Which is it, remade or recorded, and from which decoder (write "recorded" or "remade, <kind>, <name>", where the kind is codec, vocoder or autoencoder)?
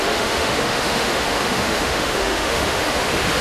remade, autoencoder, DAC-VAE